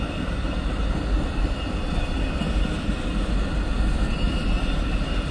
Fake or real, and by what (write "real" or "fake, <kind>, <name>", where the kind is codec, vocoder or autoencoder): real